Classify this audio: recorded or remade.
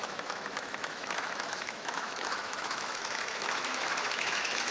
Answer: remade